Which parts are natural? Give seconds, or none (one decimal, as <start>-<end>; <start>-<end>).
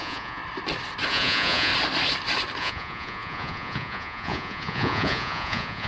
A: 0.4-1.1; 1.7-2.6